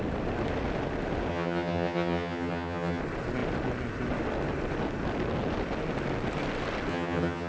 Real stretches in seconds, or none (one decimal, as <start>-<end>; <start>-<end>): 0.0-1.3; 3.0-6.9